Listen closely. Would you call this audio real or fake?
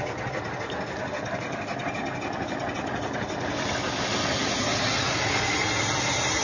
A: real